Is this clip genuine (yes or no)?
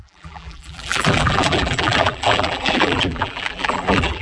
no